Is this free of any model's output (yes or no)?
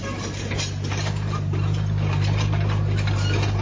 yes